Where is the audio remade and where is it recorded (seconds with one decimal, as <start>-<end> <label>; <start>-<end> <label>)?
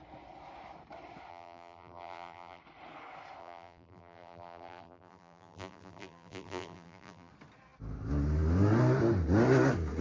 0.0-1.3 recorded; 1.3-2.6 remade; 2.6-3.4 recorded; 3.4-7.3 remade; 7.3-10.0 recorded